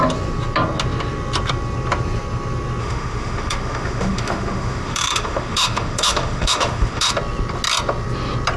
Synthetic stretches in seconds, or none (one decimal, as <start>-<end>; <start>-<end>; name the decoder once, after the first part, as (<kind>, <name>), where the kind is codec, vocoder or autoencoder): 2.8-7.1 (autoencoder, DAC-VAE)